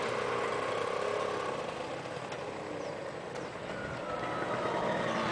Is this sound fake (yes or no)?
no